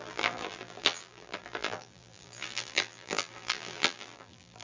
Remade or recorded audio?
remade